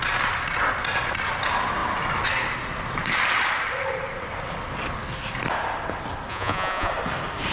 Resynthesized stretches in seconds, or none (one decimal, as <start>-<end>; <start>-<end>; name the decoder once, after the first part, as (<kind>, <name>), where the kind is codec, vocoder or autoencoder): 6.3-6.9 (vocoder, Vocos)